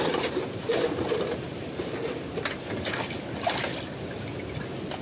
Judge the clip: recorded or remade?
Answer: recorded